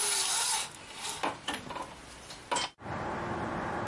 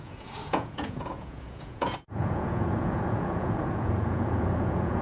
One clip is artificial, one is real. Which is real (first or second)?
first